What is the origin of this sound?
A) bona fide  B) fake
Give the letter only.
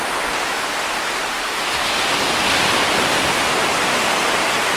A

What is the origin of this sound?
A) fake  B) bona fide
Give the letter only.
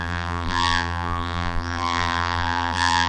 A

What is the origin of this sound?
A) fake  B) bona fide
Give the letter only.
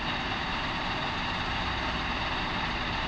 A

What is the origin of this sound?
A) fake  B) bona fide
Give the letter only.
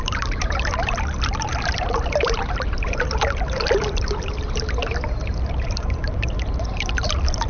A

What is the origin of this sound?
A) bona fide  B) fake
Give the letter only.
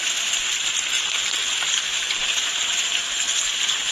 B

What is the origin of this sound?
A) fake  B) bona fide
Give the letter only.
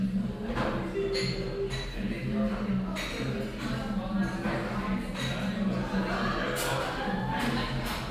B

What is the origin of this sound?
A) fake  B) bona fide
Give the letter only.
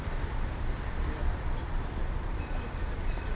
A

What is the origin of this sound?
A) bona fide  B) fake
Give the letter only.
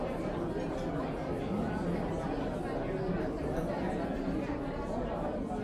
A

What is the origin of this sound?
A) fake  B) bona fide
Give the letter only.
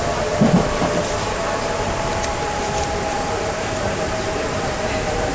A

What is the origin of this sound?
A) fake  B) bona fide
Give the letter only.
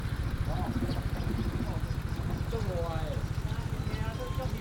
B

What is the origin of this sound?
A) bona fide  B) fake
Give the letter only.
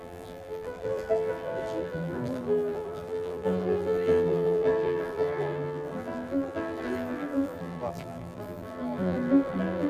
B